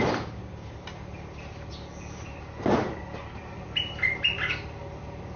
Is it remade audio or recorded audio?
recorded